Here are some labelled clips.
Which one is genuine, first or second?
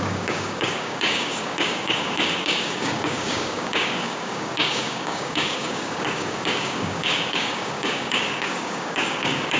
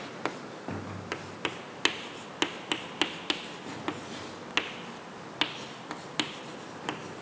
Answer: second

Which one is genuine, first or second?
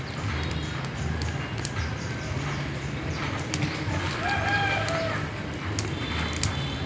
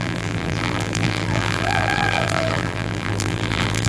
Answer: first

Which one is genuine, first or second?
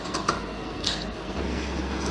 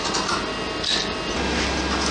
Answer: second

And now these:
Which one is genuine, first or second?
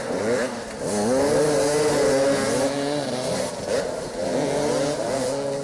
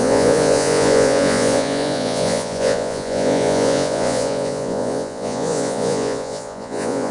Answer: first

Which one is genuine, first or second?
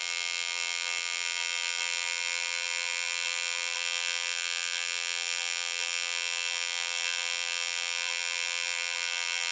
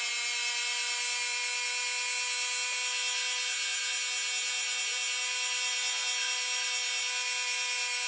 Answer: second